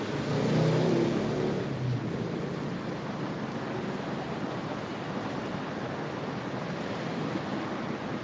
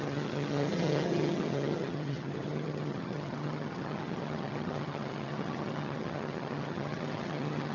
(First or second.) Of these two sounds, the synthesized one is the second